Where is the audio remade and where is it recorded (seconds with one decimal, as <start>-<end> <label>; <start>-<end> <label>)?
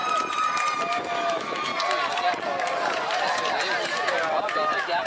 0.0-1.0 recorded; 1.0-1.7 remade; 1.7-5.1 recorded